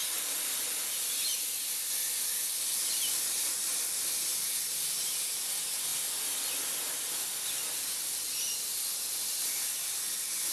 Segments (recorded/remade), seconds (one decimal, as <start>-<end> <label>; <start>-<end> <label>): 0.0-10.5 recorded